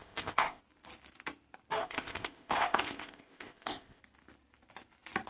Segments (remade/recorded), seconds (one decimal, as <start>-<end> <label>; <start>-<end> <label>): 0.0-0.6 remade; 0.6-1.8 recorded; 1.8-4.0 remade; 4.0-5.3 recorded

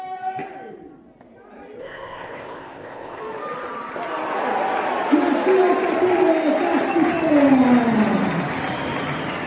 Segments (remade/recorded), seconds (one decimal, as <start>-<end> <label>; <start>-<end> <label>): 0.0-1.8 recorded; 1.8-3.2 remade; 3.2-9.5 recorded

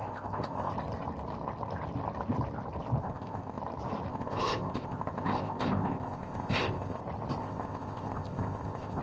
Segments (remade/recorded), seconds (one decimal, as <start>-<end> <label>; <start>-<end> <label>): 0.0-0.7 remade; 0.7-3.0 recorded; 3.0-3.6 remade; 3.6-4.1 recorded; 4.1-7.0 remade; 7.0-7.4 recorded; 7.4-9.0 remade

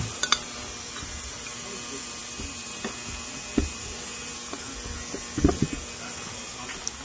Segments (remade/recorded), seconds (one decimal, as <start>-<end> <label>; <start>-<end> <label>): 0.0-7.0 recorded

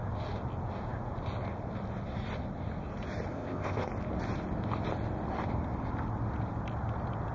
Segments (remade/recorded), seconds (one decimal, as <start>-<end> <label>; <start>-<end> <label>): 0.0-3.3 recorded; 3.3-3.9 remade; 3.9-7.3 recorded

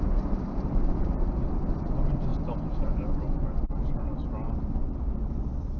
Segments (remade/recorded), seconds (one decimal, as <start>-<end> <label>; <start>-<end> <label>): 0.0-5.8 recorded

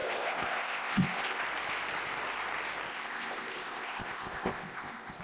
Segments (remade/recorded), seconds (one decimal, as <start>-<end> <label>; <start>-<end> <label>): 0.0-1.4 remade; 1.4-2.9 recorded; 2.9-5.2 remade